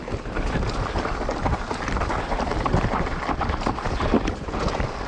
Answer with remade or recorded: remade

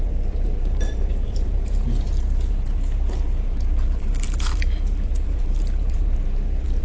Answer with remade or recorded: remade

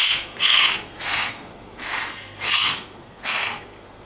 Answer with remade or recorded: remade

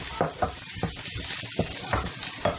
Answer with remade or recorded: recorded